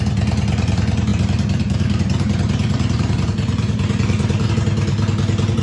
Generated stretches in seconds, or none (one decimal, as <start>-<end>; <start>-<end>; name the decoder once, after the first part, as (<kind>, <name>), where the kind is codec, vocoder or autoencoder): 1.1-4.5 (vocoder, BigVGAN v2)